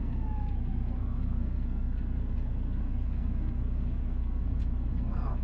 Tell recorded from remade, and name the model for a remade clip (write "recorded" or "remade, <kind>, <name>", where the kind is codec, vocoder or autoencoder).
remade, codec, SNAC